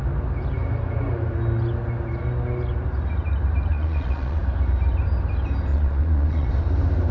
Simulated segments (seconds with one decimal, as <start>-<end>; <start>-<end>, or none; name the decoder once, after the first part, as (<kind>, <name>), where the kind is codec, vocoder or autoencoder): 3.7-4.4 (vocoder, Vocos); 5.7-6.5